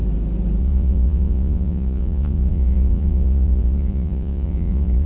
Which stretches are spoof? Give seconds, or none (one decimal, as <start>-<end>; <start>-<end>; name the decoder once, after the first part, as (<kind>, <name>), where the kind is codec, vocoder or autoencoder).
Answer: 0.6-5.1 (vocoder, Vocos)